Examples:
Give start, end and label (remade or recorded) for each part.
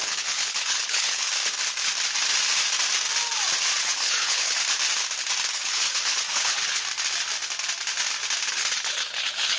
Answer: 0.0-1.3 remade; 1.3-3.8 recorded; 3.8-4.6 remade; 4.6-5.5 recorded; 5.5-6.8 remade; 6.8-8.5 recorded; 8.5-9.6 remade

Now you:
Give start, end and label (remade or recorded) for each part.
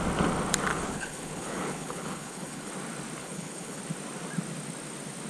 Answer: 0.0-0.7 recorded; 0.7-2.7 remade; 2.7-3.2 recorded; 3.2-3.8 remade; 3.8-5.3 recorded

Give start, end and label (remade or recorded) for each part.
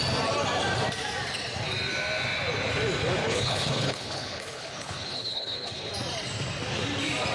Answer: 0.0-3.2 recorded; 3.2-5.9 remade; 5.9-7.3 recorded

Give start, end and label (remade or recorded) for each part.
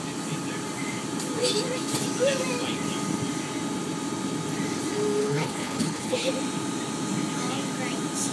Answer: 0.0-5.2 recorded; 5.2-6.3 remade; 6.3-8.3 recorded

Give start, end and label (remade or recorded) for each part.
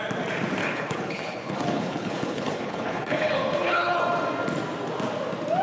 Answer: 0.0-0.6 recorded; 0.6-4.0 remade; 4.0-5.6 recorded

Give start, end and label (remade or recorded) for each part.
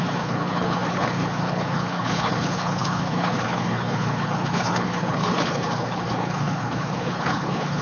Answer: 0.0-7.8 remade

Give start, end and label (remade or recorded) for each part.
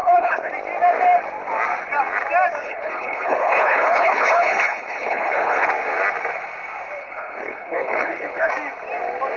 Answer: 0.0-0.5 remade; 0.5-2.6 recorded; 2.6-5.7 remade; 5.7-7.0 recorded; 7.0-8.5 remade; 8.5-9.4 recorded